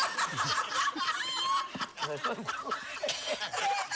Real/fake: real